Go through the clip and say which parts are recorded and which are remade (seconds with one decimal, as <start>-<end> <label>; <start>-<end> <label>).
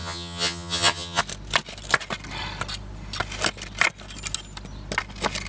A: 0.0-1.2 remade; 1.2-5.5 recorded